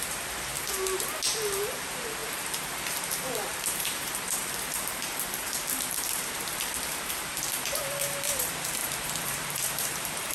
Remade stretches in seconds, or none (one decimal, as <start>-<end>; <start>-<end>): 0.0-0.5; 1.3-10.3